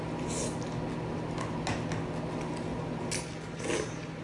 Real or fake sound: real